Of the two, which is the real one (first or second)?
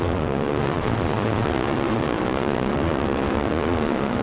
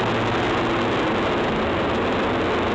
second